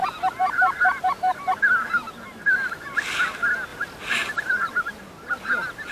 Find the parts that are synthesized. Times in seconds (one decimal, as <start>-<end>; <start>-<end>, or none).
none